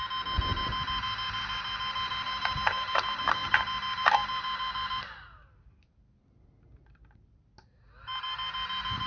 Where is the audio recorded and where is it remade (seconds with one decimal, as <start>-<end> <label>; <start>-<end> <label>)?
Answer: 0.0-9.1 recorded

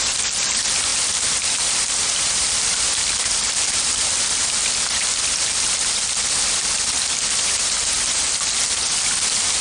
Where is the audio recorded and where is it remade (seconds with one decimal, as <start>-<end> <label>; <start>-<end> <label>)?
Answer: 0.0-9.6 recorded

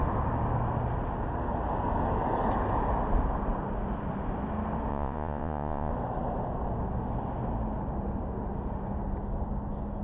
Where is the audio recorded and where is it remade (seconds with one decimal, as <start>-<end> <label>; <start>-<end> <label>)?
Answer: 0.0-4.9 recorded; 4.9-5.9 remade; 5.9-10.0 recorded

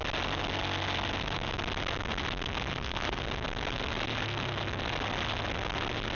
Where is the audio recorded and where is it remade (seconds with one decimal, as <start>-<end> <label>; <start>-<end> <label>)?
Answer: 0.0-2.7 recorded; 2.7-3.2 remade; 3.2-6.1 recorded

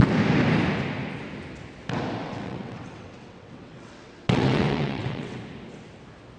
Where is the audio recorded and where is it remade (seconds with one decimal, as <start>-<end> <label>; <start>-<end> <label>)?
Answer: 0.0-2.2 recorded; 2.2-5.4 remade; 5.4-6.4 recorded

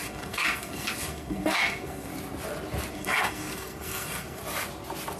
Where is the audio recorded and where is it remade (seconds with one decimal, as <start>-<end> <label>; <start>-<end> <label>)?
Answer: 0.0-2.1 remade; 2.1-2.9 recorded; 2.9-4.4 remade; 4.4-5.2 recorded

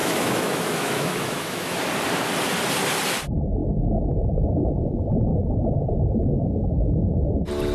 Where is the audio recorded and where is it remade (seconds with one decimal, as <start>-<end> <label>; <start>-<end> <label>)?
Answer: 0.0-1.8 remade; 1.8-7.7 recorded